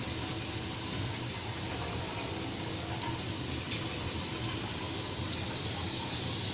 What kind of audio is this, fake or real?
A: real